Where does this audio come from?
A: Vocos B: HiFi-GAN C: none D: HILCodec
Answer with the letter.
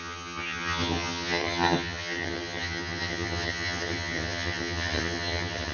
B